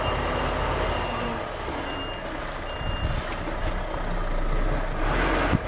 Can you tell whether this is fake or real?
real